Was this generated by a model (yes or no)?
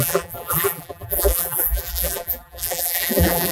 yes